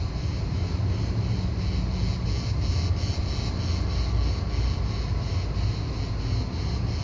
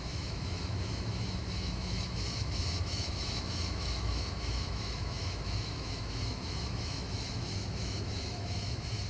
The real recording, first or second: first